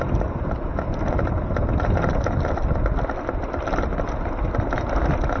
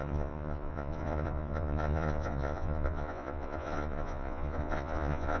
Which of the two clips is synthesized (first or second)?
second